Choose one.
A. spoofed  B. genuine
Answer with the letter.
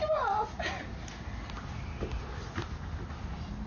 B